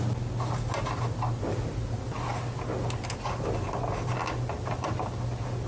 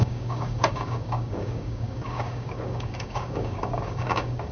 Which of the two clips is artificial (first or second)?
second